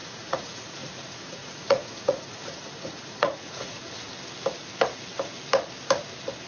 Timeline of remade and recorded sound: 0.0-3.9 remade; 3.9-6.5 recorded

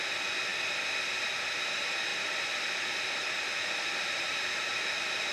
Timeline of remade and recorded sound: 0.0-4.0 recorded; 4.0-4.7 remade; 4.7-5.3 recorded

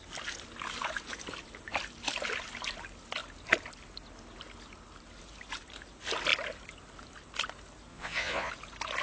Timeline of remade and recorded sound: 0.0-7.9 recorded; 7.9-8.5 remade; 8.5-9.0 recorded

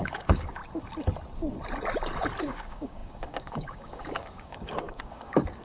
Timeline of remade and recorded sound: 0.0-0.6 remade; 0.6-2.4 recorded; 2.4-5.6 remade

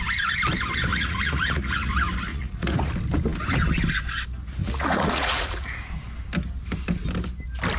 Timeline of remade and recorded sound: 0.0-0.9 recorded; 0.9-1.9 remade; 1.9-2.3 recorded; 2.3-2.9 remade; 2.9-4.6 recorded; 4.6-5.8 remade; 5.8-7.8 recorded

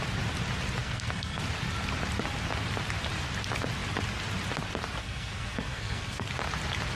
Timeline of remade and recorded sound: 0.0-0.8 recorded; 0.8-1.4 remade; 1.4-5.0 recorded; 5.0-6.3 remade; 6.3-7.0 recorded